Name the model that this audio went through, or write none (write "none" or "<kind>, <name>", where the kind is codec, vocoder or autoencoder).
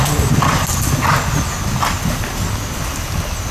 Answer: none